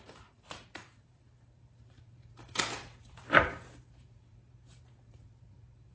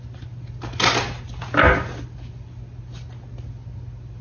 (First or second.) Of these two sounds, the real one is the second